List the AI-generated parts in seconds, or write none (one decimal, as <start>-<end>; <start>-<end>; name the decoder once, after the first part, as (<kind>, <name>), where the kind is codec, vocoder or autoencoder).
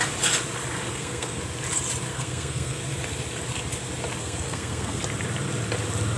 0.9-1.4 (codec, SNAC); 2.1-2.8; 4.2-5.0